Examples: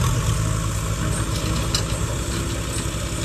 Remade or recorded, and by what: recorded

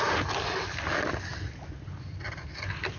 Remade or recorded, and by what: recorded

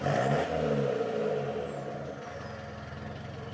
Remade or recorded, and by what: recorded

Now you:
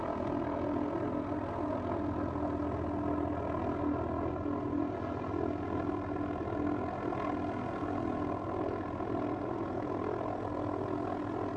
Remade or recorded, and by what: recorded